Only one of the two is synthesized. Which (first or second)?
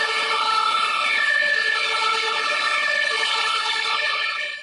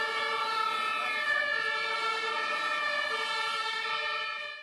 first